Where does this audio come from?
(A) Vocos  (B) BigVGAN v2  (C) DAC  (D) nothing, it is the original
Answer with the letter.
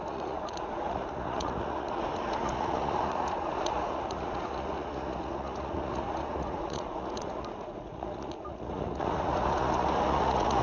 A